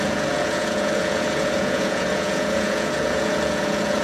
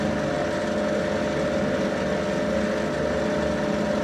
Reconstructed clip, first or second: first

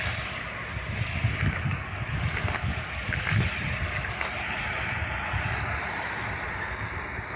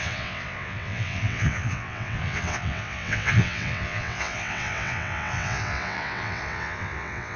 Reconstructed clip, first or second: second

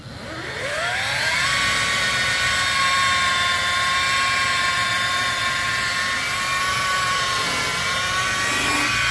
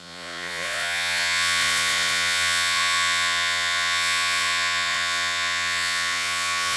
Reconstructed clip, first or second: second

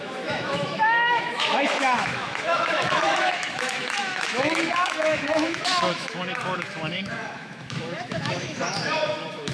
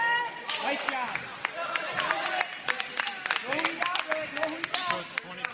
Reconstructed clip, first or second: first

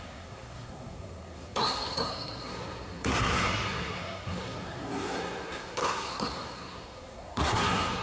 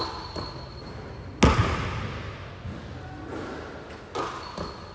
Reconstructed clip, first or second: first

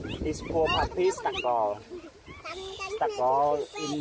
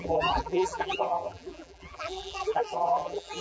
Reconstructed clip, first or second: second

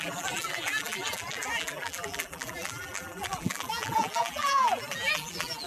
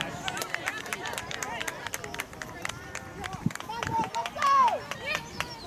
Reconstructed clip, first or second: first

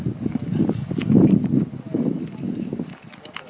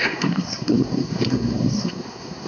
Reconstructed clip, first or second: second